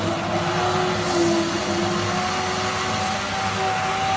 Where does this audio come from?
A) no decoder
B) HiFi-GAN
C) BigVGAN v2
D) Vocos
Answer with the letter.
A